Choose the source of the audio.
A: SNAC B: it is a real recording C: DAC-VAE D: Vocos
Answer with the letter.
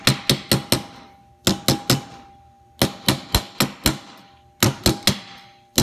B